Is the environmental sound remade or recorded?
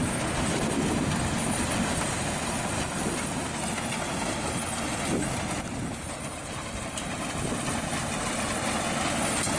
recorded